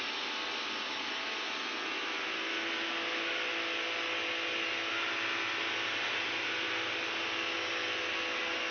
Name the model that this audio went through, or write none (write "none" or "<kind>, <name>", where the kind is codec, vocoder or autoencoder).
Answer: none